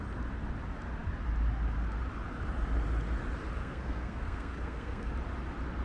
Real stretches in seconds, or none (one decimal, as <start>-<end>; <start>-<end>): 0.0-3.6; 5.1-5.8